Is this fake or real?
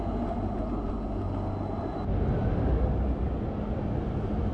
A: real